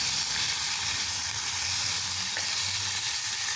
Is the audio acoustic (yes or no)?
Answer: no